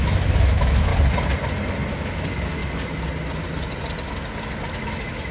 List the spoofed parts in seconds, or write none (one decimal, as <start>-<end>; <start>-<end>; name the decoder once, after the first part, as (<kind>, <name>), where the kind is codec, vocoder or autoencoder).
0.0-0.9 (autoencoder, DAC-VAE); 1.9-2.6; 4.7-5.3